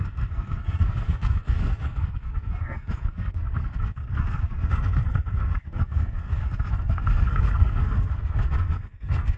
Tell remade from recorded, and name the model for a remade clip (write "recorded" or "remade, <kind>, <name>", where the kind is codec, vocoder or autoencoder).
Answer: remade, codec, SNAC